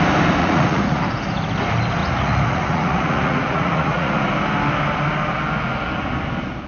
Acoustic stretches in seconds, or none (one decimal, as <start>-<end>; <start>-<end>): 0.0-0.4; 1.0-2.0; 4.2-6.7